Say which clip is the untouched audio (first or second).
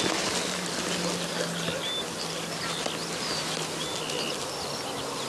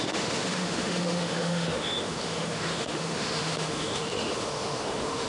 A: first